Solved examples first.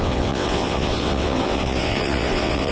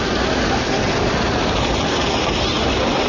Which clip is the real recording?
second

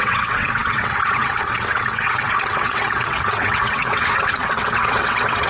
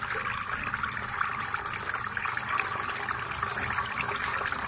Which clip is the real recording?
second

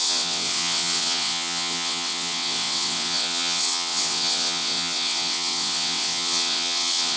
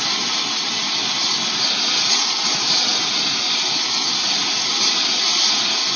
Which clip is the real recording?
second